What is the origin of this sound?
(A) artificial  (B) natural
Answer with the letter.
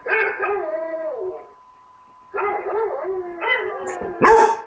B